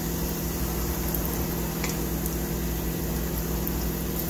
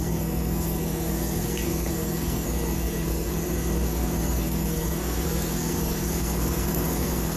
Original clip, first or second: first